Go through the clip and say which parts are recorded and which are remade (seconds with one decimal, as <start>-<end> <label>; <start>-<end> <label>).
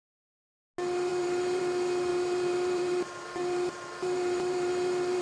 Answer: 0.0-1.1 recorded; 1.1-1.6 remade; 1.6-2.1 recorded; 2.1-5.2 remade